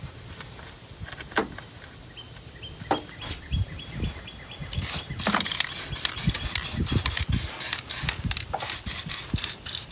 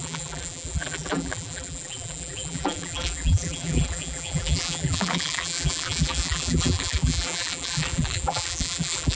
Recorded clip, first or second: first